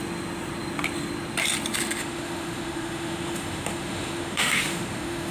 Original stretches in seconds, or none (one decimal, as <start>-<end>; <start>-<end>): 0.0-2.0